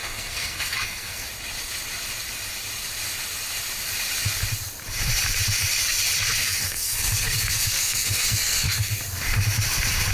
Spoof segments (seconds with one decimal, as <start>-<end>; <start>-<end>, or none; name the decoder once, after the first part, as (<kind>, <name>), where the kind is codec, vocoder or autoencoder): 0.0-1.3 (codec, SNAC); 6.4-9.0